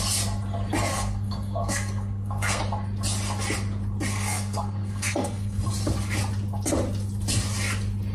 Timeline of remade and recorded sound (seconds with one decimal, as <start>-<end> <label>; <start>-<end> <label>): 0.0-0.9 recorded; 0.9-2.6 remade; 2.6-4.1 recorded; 4.1-5.6 remade; 5.6-8.1 recorded